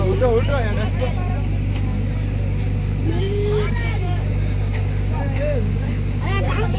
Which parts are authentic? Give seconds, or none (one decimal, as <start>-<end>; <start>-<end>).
0.5-3.2